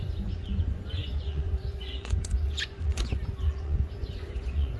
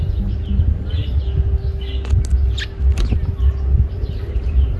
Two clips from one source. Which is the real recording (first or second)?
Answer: second